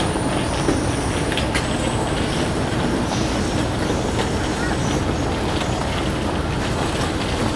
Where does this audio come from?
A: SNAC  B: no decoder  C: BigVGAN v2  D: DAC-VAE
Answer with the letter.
B